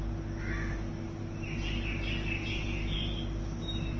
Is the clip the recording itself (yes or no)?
yes